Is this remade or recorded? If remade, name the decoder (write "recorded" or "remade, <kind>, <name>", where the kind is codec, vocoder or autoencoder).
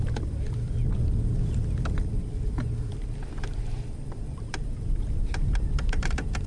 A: remade, vocoder, BigVGAN v2